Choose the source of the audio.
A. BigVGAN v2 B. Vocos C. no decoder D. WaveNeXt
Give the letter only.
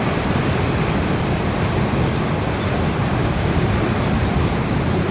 C